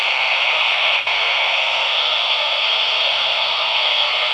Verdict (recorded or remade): remade